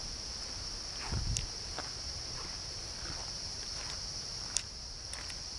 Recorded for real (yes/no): yes